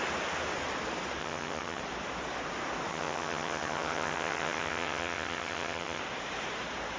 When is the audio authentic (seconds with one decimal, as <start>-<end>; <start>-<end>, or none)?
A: 0.0-1.2; 1.8-2.9; 6.0-7.0